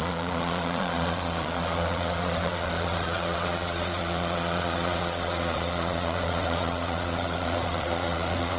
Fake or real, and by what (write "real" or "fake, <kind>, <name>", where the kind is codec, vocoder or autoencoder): fake, vocoder, Vocos